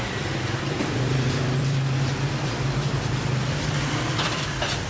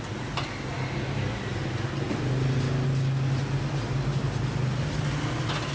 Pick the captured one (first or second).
second